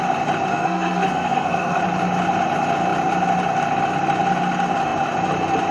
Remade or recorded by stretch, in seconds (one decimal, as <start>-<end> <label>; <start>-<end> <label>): 0.0-0.5 recorded; 0.5-1.8 remade; 1.8-5.7 recorded